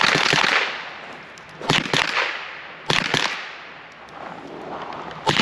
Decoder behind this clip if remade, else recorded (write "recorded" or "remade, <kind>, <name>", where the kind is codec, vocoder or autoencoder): recorded